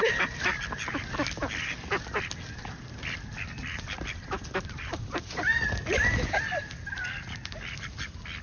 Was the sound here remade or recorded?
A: recorded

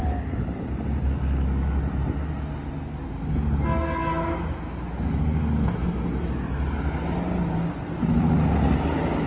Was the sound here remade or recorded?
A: recorded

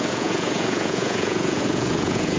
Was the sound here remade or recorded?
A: remade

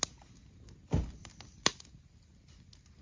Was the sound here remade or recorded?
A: recorded